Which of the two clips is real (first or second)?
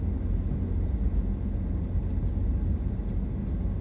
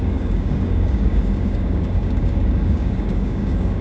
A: first